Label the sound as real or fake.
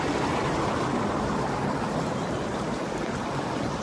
real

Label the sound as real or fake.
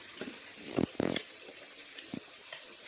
fake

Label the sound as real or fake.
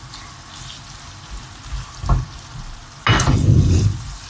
real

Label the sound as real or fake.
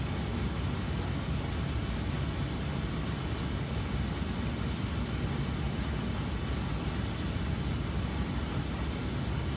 real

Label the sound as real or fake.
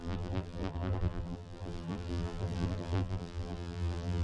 fake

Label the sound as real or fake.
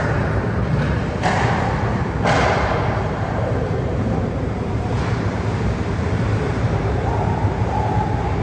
fake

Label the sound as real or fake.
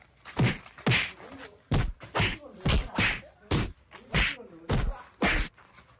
real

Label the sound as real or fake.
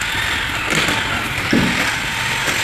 real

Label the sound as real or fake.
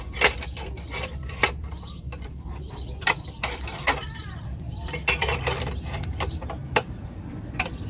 fake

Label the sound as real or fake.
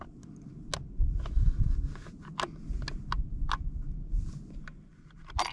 real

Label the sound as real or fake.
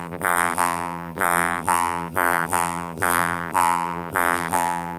fake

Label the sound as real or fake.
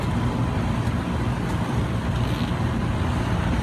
real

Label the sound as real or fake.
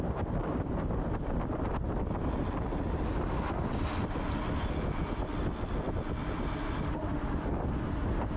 real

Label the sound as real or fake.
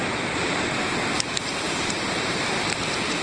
fake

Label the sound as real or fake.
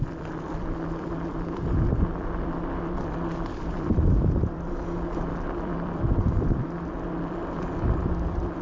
fake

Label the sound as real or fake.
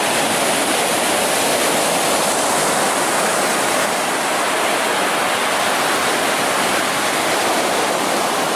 real